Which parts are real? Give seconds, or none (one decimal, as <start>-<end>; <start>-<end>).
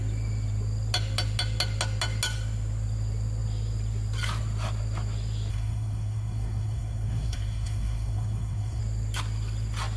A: 0.0-5.5; 8.8-10.0